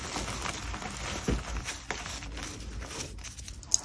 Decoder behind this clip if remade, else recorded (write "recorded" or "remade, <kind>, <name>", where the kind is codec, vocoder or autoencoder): recorded